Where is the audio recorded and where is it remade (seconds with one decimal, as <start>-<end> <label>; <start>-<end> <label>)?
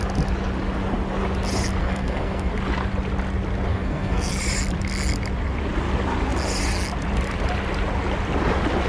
0.0-1.8 recorded; 1.8-2.5 remade; 2.5-3.7 recorded; 3.7-4.3 remade; 4.3-8.9 recorded